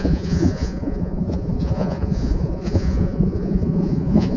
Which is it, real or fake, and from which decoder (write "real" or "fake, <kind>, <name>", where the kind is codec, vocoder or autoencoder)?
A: fake, vocoder, Vocos